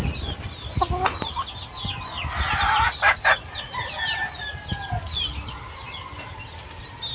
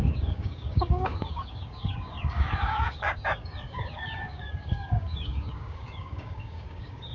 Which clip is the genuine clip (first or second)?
first